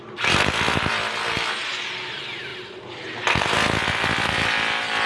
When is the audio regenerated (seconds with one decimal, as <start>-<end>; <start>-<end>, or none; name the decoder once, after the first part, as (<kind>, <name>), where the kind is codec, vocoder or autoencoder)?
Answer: none